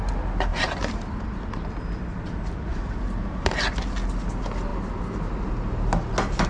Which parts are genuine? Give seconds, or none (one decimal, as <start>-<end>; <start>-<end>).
0.0-0.5; 1.7-2.7; 3.6-6.5